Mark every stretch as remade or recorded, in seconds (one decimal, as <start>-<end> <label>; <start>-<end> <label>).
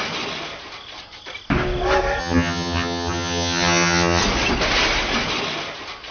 0.0-2.2 recorded; 2.2-4.2 remade; 4.2-6.1 recorded